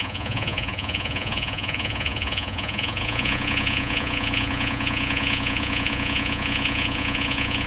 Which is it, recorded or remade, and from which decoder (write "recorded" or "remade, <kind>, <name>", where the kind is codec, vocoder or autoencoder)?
remade, vocoder, Vocos